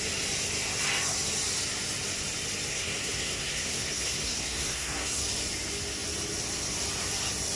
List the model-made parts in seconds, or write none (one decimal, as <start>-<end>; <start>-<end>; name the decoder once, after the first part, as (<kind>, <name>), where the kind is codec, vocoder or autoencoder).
2.7-5.2 (codec, SNAC)